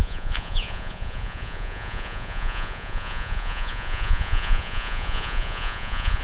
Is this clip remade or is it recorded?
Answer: remade